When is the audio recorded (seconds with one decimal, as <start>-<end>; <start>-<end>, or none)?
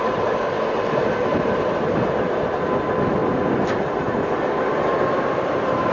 0.0-5.9